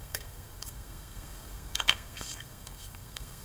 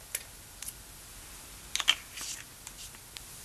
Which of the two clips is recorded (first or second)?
second